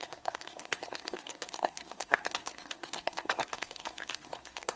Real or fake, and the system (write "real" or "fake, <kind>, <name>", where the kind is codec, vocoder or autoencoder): fake, codec, SNAC